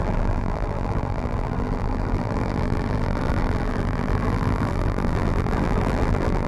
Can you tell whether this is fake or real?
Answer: fake